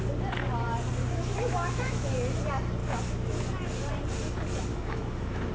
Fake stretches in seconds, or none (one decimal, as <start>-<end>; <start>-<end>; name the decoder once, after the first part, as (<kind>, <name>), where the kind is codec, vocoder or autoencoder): 1.0-2.1 (autoencoder, DAC-VAE); 2.8-3.5; 4.7-5.5